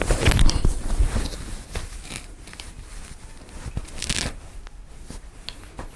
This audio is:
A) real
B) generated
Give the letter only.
A